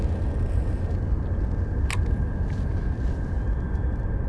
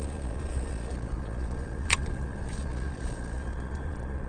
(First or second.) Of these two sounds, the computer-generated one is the second